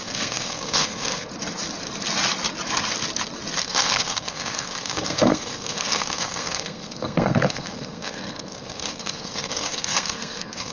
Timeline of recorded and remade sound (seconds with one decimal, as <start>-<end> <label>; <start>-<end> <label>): 0.0-1.3 remade; 1.3-3.6 recorded; 3.6-10.7 remade